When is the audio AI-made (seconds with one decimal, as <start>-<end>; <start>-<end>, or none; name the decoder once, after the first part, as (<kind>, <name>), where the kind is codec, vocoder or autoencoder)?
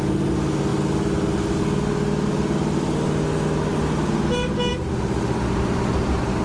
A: none